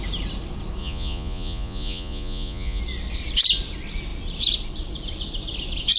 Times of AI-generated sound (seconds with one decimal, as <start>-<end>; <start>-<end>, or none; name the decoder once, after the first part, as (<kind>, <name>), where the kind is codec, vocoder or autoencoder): 0.8-2.8 (vocoder, Vocos)